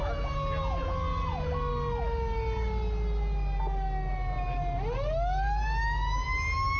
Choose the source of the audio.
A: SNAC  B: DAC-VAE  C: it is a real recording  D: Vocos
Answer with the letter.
C